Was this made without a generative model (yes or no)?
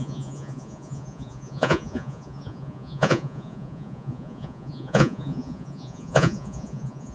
no